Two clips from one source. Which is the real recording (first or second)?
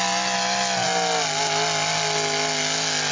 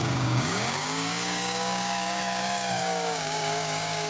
first